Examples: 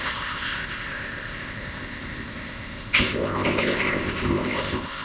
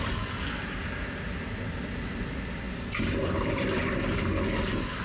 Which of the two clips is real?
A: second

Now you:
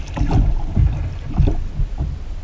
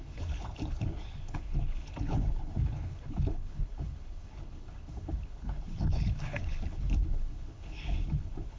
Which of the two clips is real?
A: first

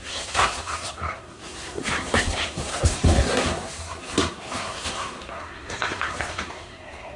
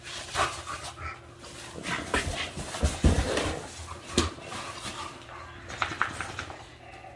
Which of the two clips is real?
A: second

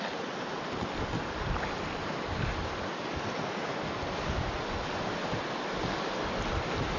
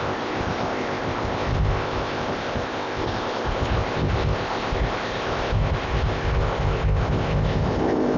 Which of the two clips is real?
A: first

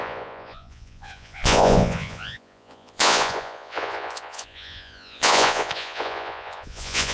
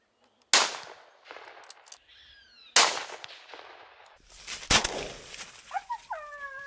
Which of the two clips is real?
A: second